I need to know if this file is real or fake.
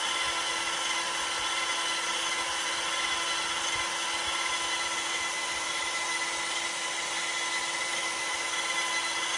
real